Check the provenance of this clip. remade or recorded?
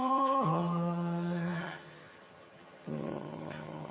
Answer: remade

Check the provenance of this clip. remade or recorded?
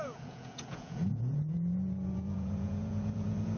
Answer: remade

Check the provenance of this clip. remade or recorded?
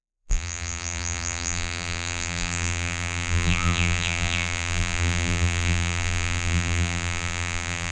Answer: remade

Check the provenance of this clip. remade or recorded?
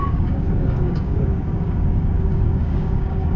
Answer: remade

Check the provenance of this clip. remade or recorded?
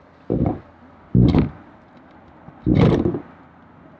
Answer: recorded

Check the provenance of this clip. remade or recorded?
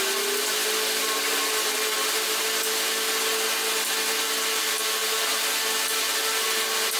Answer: recorded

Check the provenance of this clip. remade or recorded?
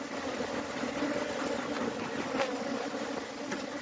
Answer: recorded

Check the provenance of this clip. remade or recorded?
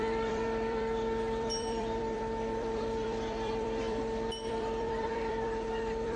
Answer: remade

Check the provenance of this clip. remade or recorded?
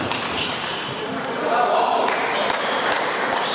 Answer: remade